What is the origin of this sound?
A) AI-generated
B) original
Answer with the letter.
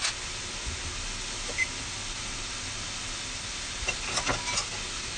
B